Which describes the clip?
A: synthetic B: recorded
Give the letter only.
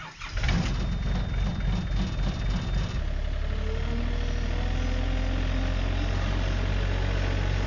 B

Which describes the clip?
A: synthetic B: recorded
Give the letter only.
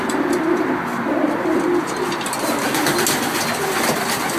B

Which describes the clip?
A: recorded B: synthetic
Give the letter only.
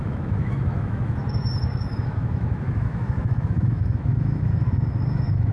B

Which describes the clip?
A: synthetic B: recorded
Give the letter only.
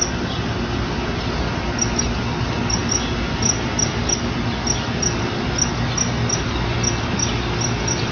B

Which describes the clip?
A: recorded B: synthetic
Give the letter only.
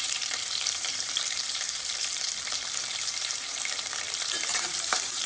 B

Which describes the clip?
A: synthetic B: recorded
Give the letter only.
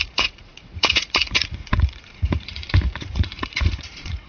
A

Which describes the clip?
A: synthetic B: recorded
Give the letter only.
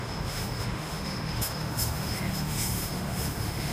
A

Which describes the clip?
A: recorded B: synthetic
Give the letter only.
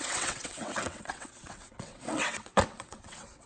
B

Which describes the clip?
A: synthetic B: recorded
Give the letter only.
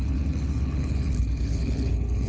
A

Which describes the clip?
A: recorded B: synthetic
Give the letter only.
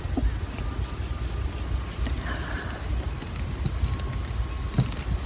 A